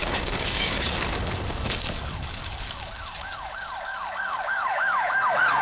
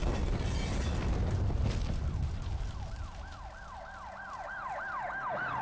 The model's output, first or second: first